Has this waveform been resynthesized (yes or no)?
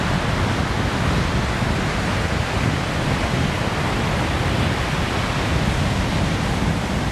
no